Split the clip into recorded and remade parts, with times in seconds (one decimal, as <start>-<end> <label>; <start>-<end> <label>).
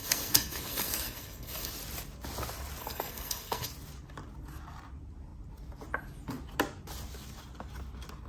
0.0-1.7 remade; 1.7-2.8 recorded; 2.8-3.7 remade; 3.7-8.3 recorded